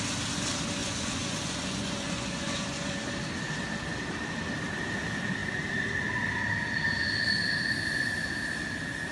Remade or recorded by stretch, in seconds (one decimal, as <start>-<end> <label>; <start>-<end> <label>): 0.0-0.8 recorded; 0.8-3.1 remade; 3.1-9.1 recorded